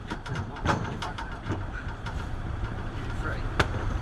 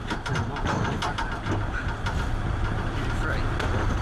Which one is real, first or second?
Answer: second